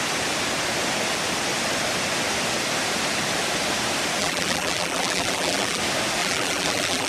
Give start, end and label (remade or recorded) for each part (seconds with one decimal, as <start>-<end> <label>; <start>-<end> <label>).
0.0-4.2 recorded; 4.2-5.8 remade; 5.8-6.2 recorded; 6.2-7.1 remade